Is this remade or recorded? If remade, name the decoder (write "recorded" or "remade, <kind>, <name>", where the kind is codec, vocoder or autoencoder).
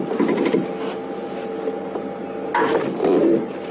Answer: recorded